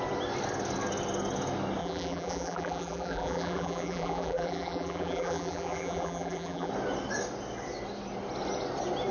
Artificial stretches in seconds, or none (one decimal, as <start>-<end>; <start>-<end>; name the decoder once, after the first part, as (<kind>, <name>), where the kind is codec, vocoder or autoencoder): 1.8-6.7 (vocoder, BigVGAN v2)